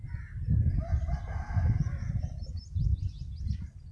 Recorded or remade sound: recorded